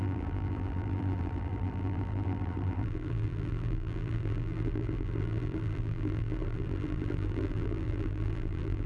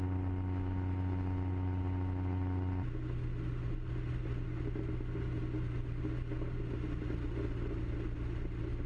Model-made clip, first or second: first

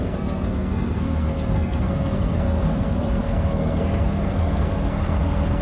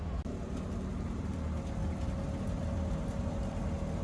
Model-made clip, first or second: first